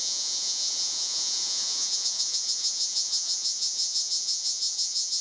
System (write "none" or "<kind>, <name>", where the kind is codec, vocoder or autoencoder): vocoder, Vocos